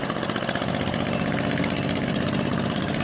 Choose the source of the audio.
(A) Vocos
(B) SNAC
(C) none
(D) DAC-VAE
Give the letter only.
C